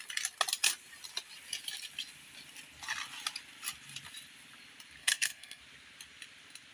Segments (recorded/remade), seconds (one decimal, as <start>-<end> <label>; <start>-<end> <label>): 0.0-5.0 recorded; 5.0-5.6 remade; 5.6-6.7 recorded